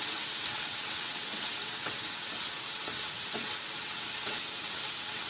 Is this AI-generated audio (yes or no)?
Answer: yes